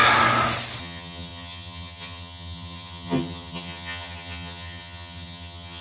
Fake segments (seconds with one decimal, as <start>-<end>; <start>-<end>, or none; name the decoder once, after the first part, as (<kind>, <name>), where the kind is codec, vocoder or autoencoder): 0.8-5.8 (vocoder, HiFi-GAN)